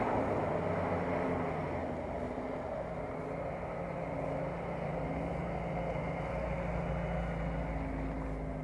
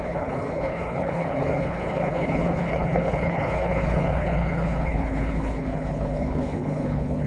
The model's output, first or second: second